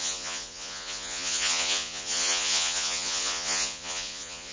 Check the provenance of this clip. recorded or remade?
remade